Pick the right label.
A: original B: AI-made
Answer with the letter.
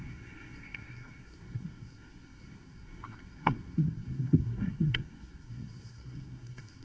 B